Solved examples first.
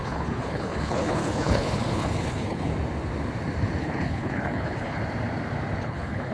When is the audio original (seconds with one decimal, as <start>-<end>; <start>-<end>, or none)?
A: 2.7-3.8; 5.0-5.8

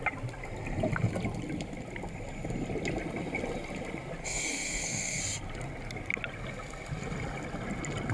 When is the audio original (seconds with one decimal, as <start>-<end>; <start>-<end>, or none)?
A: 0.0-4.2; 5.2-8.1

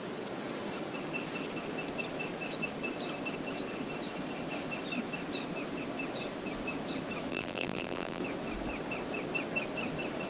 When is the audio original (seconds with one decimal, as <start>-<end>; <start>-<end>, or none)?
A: 0.0-7.3; 8.2-10.3